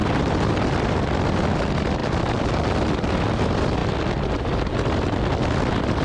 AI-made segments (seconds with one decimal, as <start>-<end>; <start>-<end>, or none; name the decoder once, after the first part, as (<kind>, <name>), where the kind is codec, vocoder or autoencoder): 0.0-0.7 (vocoder, BigVGAN v2); 2.0-2.5